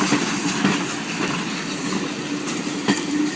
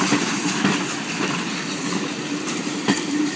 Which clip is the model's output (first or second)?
second